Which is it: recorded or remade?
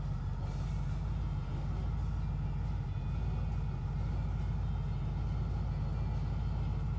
recorded